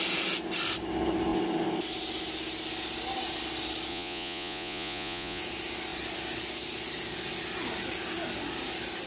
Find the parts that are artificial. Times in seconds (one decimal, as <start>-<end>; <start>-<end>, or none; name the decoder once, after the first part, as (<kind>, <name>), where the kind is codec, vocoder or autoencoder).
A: 3.9-5.4 (vocoder, Vocos)